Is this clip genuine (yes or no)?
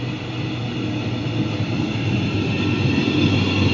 yes